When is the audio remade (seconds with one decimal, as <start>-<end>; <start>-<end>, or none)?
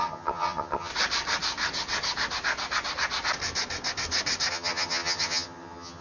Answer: 0.0-0.9; 4.5-6.0